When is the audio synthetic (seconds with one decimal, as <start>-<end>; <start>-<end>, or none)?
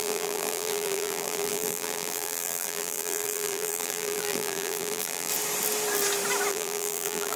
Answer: 0.0-5.3; 6.5-7.4